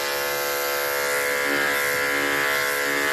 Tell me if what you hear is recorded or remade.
recorded